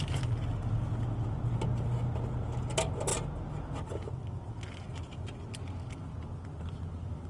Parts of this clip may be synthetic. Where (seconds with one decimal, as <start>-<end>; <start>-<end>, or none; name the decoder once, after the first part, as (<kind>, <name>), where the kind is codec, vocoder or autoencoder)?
none